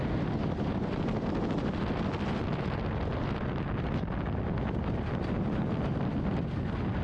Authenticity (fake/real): real